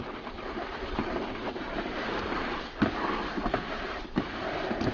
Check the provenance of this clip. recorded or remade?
recorded